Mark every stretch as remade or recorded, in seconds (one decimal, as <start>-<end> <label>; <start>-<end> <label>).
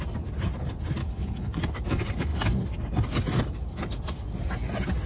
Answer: 0.0-1.0 recorded; 1.0-1.6 remade; 1.6-5.1 recorded